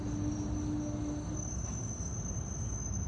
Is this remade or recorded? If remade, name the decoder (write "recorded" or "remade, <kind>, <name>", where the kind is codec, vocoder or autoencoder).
recorded